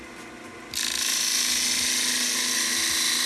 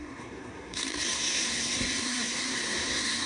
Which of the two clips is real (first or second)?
first